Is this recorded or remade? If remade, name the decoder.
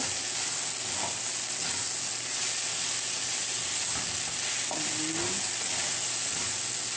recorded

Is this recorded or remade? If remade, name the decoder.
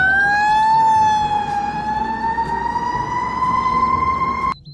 recorded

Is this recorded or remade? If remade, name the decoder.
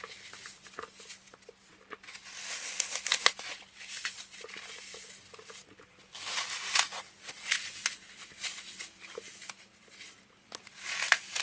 recorded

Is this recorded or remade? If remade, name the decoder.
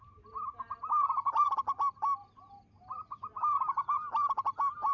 recorded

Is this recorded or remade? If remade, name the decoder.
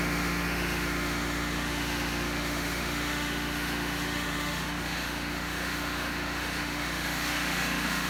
remade, autoencoder, DAC-VAE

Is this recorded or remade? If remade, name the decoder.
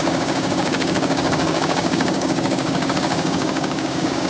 remade, codec, DAC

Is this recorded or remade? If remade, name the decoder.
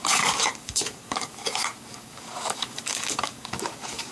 remade, codec, DAC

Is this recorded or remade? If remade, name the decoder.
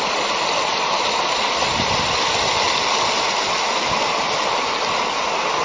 recorded